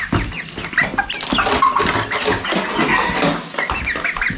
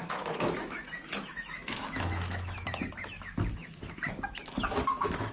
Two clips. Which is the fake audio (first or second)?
second